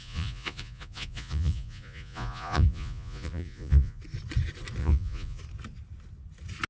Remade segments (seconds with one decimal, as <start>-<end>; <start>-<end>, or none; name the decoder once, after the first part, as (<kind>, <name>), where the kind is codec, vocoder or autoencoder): 0.0-4.0 (vocoder, Vocos); 4.8-5.4